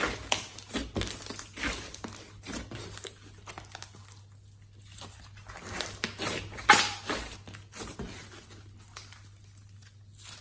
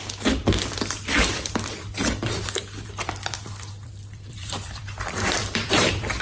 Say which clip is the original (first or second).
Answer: first